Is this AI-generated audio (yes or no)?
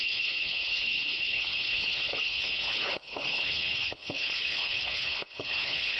yes